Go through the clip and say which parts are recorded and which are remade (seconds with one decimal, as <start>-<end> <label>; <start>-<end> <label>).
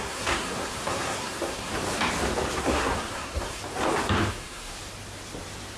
0.0-1.7 remade; 1.7-2.6 recorded; 2.6-3.6 remade; 3.6-4.3 recorded; 4.3-4.7 remade; 4.7-5.8 recorded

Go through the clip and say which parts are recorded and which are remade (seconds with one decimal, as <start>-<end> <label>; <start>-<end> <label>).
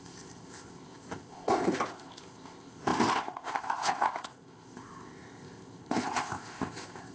0.0-7.1 remade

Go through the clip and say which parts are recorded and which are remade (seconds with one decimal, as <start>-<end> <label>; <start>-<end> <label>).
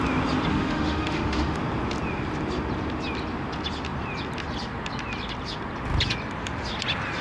0.0-0.5 recorded; 0.5-1.6 remade; 1.6-7.2 recorded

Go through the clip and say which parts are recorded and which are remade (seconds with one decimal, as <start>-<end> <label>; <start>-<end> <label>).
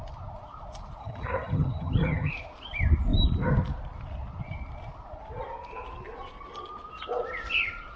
0.0-1.0 recorded; 1.0-2.3 remade; 2.3-8.0 recorded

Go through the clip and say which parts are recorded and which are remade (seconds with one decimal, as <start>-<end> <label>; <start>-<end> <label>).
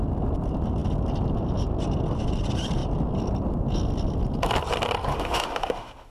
0.0-5.1 recorded; 5.1-6.1 remade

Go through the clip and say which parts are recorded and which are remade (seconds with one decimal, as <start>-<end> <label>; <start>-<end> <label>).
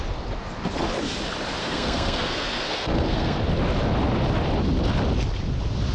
0.0-1.6 recorded; 1.6-3.4 remade; 3.4-5.9 recorded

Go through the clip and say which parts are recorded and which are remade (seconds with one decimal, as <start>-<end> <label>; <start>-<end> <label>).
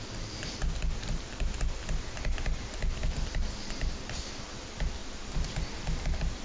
0.0-6.4 recorded